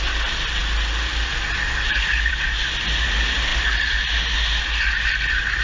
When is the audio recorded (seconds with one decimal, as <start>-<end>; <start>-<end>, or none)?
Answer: 0.0-5.6